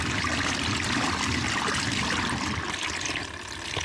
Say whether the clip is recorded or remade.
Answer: recorded